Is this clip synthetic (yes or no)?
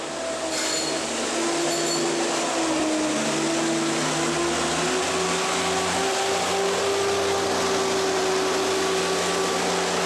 no